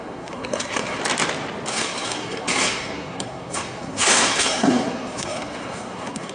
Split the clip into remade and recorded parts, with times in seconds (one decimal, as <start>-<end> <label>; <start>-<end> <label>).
0.0-1.0 remade; 1.0-1.7 recorded; 1.7-6.3 remade